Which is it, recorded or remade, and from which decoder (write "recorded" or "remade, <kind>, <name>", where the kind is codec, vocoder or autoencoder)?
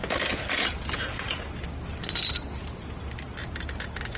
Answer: recorded